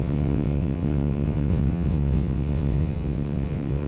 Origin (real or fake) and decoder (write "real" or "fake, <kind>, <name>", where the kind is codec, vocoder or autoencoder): fake, vocoder, WaveNeXt